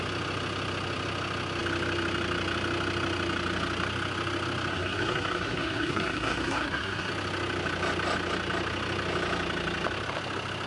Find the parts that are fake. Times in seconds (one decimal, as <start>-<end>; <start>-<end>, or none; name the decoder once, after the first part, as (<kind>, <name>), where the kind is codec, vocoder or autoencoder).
4.7-7.1 (codec, SNAC)